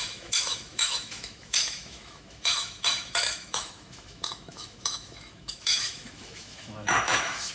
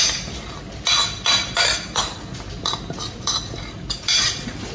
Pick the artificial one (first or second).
first